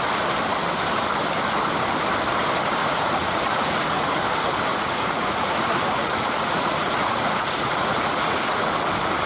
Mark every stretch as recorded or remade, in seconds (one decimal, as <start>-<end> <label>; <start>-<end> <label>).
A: 0.0-2.8 recorded; 2.8-4.2 remade; 4.2-4.7 recorded; 4.7-8.7 remade; 8.7-9.3 recorded